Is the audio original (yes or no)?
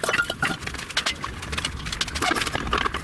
yes